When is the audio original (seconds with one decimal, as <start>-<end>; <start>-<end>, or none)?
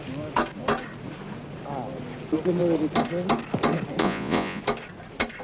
0.0-4.0; 4.6-5.4